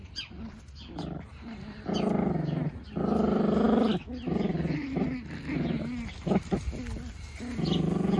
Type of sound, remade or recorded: recorded